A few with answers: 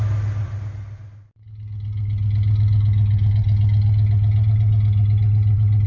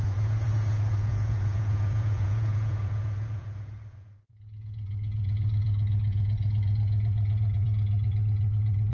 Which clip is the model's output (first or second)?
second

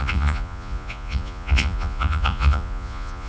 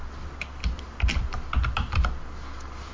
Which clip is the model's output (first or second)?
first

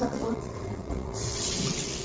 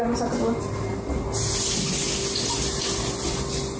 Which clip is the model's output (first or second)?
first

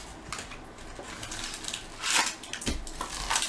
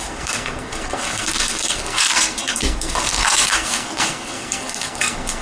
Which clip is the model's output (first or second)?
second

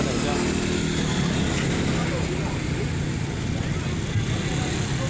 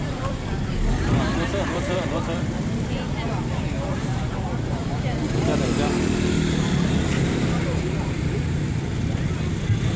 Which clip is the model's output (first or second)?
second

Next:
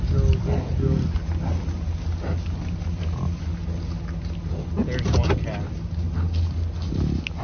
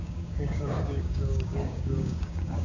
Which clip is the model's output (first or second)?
second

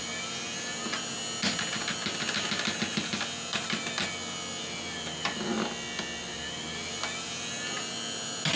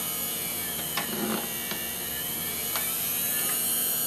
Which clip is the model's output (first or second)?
second